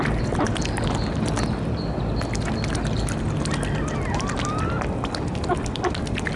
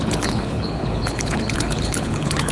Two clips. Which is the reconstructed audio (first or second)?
second